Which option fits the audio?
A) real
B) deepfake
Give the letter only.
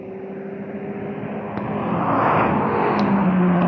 A